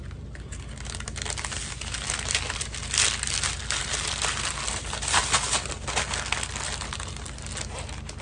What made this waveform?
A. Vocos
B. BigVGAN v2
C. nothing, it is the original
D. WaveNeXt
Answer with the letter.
C